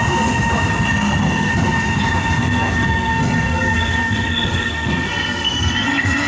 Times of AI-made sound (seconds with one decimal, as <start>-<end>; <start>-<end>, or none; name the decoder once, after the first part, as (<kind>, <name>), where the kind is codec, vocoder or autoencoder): 0.7-1.5 (codec, SNAC); 2.4-6.3